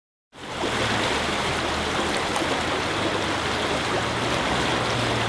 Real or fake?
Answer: real